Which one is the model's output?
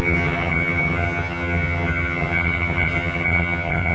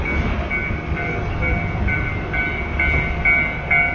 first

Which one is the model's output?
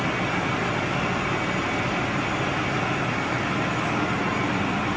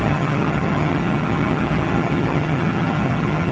second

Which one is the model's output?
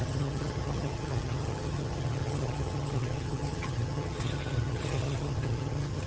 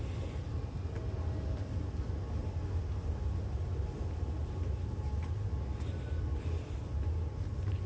first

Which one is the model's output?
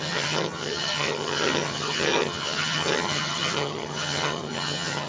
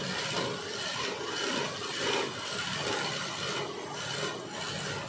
first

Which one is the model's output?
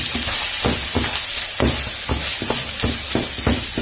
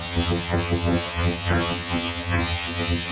second